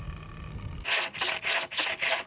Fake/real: real